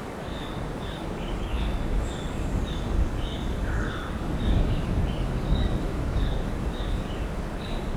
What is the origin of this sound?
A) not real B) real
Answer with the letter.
A